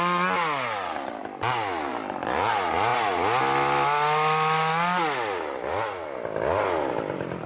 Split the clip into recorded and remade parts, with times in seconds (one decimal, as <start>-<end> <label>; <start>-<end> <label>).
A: 0.0-7.5 recorded